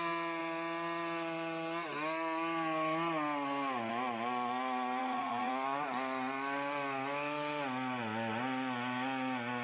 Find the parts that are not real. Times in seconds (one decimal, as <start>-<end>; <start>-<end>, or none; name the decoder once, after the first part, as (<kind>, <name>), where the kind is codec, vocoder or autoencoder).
5.0-5.5 (vocoder, Vocos)